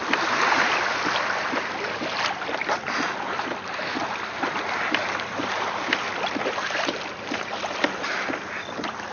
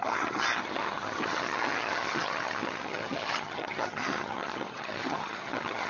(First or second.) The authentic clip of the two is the first